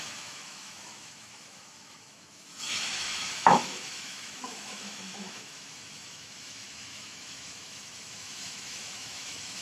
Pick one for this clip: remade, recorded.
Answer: remade